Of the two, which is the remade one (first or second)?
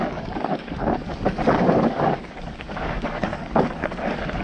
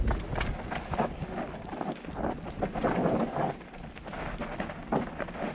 first